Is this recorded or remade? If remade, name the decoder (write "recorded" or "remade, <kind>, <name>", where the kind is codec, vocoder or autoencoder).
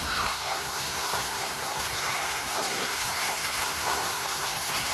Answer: remade, codec, SNAC